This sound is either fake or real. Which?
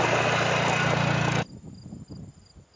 real